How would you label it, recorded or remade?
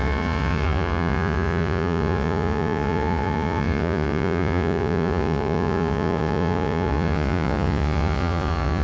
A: remade